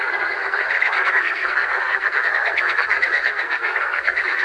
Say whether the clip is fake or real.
fake